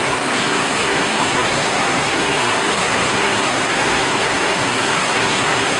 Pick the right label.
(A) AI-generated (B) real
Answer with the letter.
A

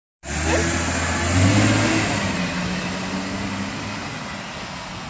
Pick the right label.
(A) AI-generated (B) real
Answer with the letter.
B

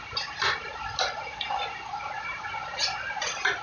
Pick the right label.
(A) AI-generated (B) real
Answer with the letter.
B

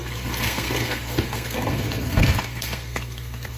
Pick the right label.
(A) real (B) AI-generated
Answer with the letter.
B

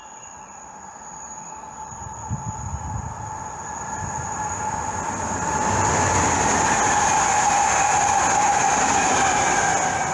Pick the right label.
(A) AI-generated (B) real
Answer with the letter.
B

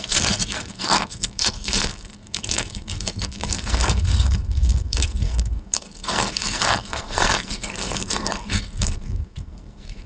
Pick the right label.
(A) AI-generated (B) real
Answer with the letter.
A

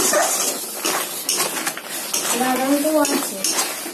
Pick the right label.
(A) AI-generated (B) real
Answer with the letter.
B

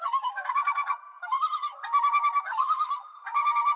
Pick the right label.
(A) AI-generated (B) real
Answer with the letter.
A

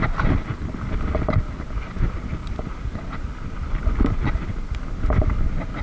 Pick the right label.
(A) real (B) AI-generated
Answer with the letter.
A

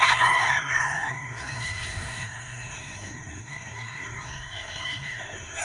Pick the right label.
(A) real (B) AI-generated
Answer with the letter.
B